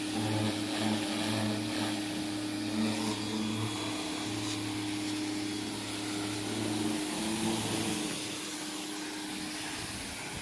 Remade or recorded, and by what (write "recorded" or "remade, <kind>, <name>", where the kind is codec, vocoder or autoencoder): recorded